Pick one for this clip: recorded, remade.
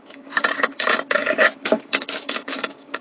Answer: remade